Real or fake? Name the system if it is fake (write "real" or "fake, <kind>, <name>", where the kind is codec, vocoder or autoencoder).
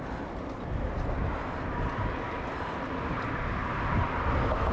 real